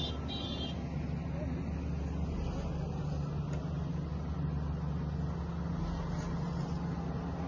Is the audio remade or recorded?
recorded